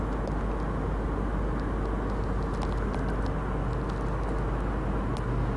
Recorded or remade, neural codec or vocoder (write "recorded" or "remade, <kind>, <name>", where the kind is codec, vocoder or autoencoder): recorded